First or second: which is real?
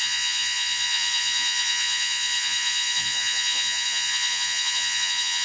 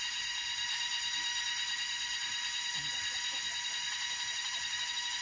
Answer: second